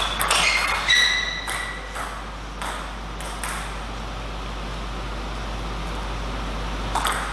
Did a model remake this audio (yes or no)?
no